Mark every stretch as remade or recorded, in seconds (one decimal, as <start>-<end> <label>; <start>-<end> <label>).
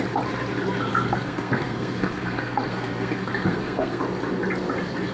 0.0-0.9 recorded; 0.9-4.0 remade; 4.0-5.1 recorded